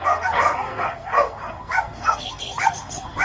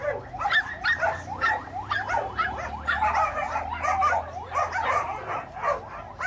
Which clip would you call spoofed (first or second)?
first